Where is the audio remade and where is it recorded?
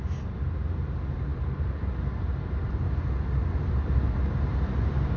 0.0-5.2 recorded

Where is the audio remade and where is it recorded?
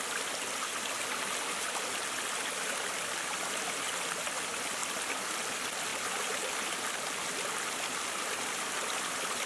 0.0-9.5 recorded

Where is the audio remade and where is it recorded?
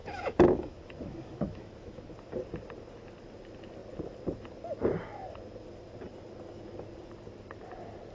0.0-2.0 remade; 2.0-8.1 recorded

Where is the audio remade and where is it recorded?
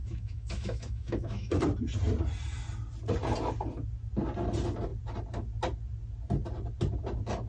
0.0-1.6 remade; 1.6-7.5 recorded